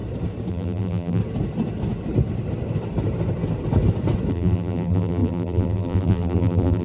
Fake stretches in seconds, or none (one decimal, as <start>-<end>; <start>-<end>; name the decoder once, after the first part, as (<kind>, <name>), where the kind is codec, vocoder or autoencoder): 0.5-1.2 (vocoder, BigVGAN v2); 4.3-6.8